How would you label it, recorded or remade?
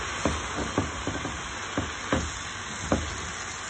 recorded